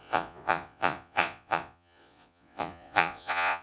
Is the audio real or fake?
fake